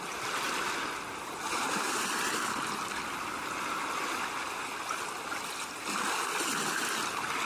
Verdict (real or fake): real